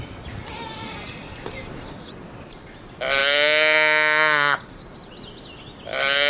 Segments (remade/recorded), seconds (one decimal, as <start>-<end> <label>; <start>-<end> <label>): 0.0-6.3 recorded